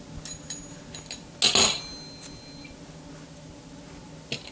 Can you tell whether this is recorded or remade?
recorded